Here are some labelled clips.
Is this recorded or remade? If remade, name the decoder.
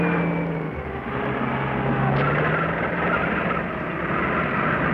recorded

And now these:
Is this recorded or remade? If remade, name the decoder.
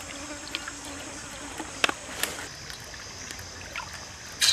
recorded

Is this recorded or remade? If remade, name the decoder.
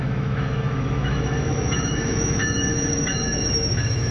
remade, autoencoder, DAC-VAE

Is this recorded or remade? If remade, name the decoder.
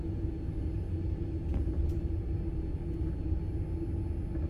recorded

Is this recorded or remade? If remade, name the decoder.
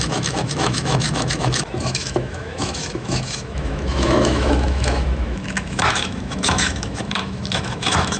remade, autoencoder, DAC-VAE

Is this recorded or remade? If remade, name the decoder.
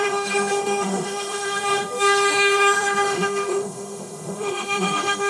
remade, autoencoder, DAC-VAE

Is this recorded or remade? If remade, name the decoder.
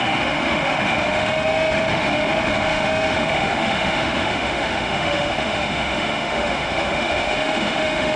remade, autoencoder, DAC-VAE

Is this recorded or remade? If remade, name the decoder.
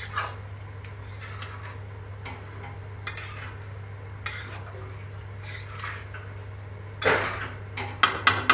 recorded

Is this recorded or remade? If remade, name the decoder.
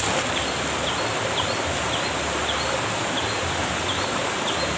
recorded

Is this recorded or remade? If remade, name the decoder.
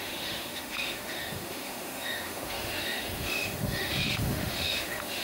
remade, autoencoder, DAC-VAE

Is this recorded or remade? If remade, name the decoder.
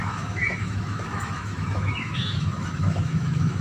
remade, autoencoder, DAC-VAE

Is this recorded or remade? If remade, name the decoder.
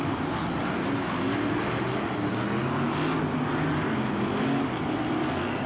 recorded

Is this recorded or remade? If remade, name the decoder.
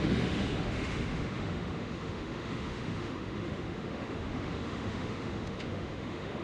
remade, autoencoder, DAC-VAE